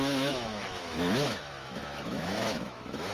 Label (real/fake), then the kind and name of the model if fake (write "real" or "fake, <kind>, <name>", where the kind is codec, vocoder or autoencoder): fake, autoencoder, DAC-VAE